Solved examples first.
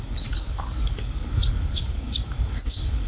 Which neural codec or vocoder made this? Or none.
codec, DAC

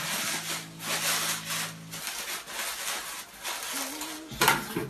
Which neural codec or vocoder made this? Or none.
none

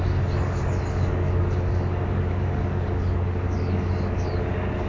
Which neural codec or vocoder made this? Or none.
codec, DAC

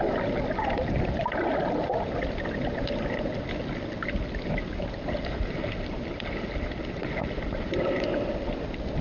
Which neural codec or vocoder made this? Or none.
none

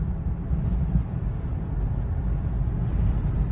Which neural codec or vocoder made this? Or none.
none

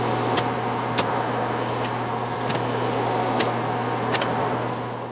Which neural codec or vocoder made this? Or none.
none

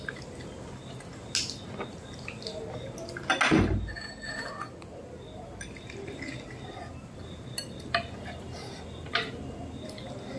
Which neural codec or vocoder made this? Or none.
none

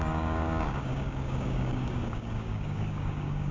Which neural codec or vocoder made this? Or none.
codec, DAC